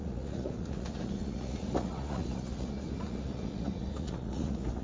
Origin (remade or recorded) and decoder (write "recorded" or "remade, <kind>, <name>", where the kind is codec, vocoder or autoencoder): remade, vocoder, Vocos